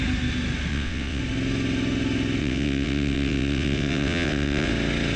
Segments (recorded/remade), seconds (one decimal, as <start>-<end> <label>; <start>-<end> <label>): 0.0-0.7 recorded; 0.7-1.2 remade; 1.2-2.4 recorded; 2.4-4.7 remade; 4.7-5.2 recorded